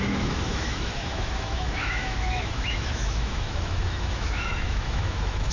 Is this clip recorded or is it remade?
remade